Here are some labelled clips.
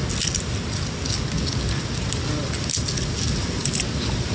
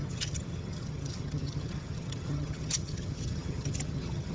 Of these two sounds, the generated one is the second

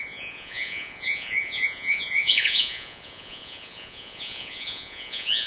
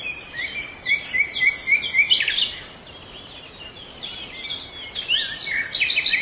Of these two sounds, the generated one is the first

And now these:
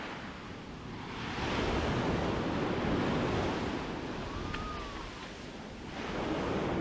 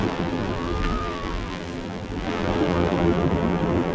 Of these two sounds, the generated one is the second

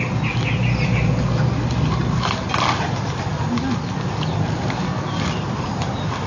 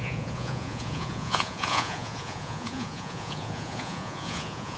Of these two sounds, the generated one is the second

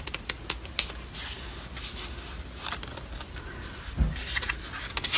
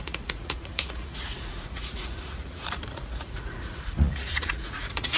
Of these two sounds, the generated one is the second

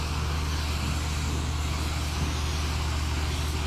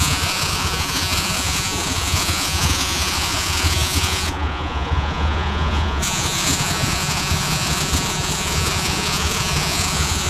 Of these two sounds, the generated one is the second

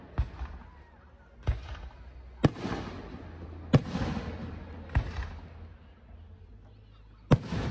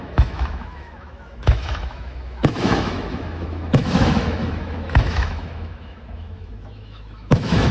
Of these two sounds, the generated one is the second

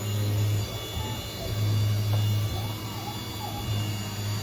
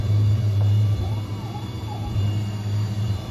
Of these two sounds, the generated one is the second